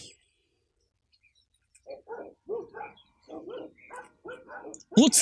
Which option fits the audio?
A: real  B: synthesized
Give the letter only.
A